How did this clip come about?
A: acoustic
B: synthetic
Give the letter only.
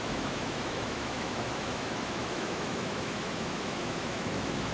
B